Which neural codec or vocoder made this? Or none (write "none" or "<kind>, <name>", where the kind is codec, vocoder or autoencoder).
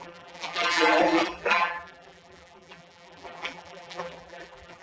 vocoder, BigVGAN v2